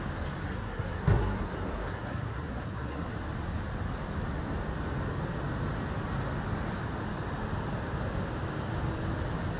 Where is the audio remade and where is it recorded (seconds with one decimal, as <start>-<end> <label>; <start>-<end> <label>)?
0.0-0.5 recorded; 0.5-3.1 remade; 3.1-9.6 recorded